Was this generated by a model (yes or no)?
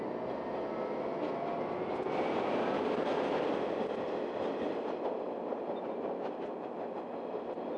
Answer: no